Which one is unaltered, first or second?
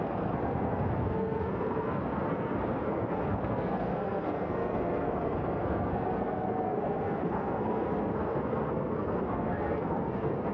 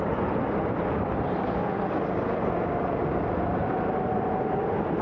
second